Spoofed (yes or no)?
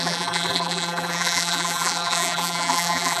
yes